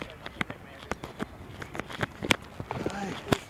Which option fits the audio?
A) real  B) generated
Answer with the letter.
A